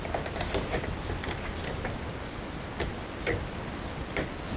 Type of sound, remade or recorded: recorded